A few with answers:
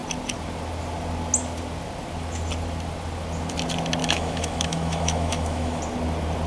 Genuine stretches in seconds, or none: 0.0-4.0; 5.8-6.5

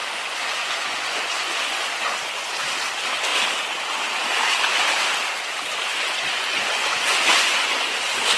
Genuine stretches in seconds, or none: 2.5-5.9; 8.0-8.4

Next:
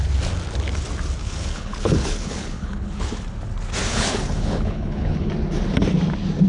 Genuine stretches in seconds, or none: 0.0-1.2; 3.1-3.9; 5.3-6.5

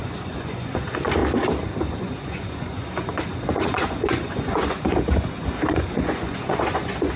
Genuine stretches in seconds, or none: 1.2-1.9

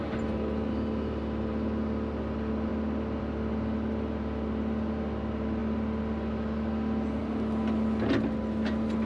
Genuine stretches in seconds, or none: 0.0-9.1

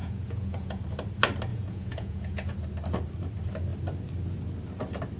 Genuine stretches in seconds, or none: 0.8-1.5; 2.5-5.2

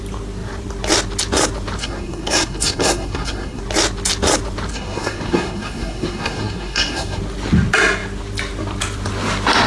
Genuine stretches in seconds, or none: 0.0-1.8; 3.6-4.7; 7.2-9.7